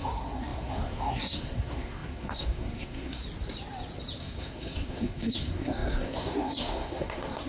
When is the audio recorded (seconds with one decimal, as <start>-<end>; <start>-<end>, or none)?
3.2-4.2